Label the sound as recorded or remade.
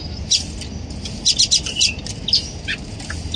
recorded